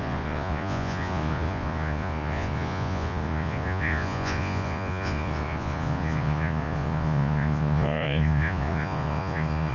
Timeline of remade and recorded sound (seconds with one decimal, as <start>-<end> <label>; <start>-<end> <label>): 0.0-9.7 remade